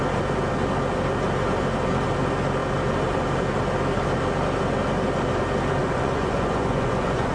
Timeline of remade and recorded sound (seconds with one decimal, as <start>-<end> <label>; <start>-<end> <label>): 0.0-5.8 recorded; 5.8-7.3 remade